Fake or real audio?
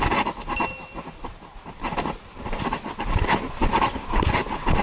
real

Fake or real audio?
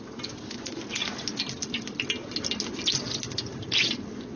real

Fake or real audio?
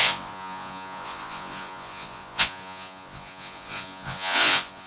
fake